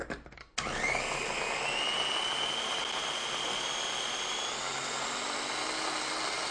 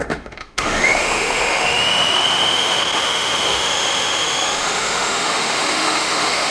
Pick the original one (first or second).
first